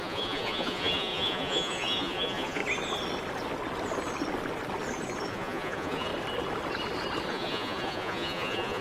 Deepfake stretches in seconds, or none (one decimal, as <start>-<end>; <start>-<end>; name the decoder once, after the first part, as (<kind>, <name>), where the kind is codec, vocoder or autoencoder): 0.0-2.6 (vocoder, Vocos); 5.3-6.1; 7.3-8.8